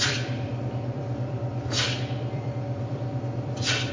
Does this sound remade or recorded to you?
remade